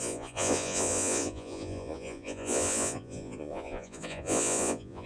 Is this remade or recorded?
remade